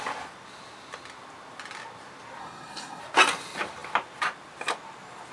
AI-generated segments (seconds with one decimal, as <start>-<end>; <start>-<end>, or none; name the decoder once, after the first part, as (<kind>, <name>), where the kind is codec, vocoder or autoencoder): 2.4-3.0 (codec, SNAC)